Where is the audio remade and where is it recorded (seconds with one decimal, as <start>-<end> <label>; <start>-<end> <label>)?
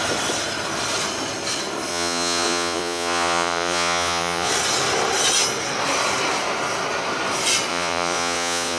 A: 0.0-1.9 recorded; 1.9-4.5 remade; 4.5-7.7 recorded; 7.7-8.8 remade